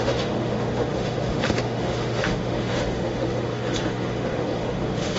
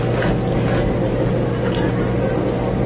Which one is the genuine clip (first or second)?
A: second